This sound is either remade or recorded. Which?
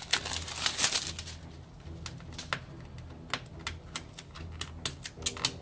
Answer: recorded